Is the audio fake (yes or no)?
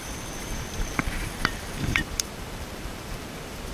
yes